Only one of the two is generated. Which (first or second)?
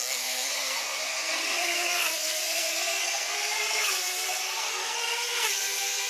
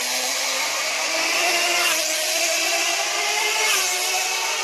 first